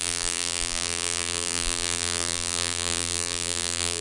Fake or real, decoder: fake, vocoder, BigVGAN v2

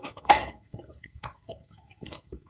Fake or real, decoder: fake, codec, SNAC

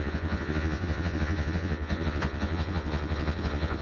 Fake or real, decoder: fake, vocoder, Vocos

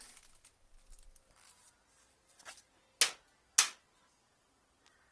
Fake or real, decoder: real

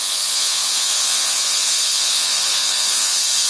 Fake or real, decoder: fake, vocoder, Vocos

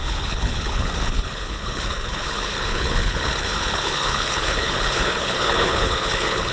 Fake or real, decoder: fake, codec, HILCodec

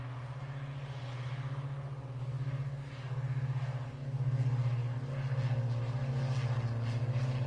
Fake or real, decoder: real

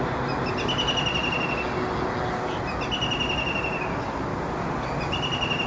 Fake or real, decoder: real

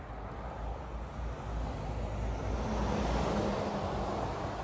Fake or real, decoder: real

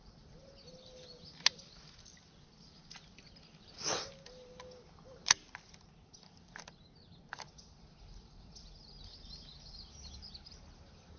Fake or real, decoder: real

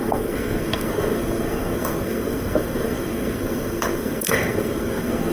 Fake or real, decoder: fake, codec, SNAC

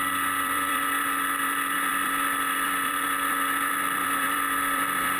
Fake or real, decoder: fake, vocoder, BigVGAN v2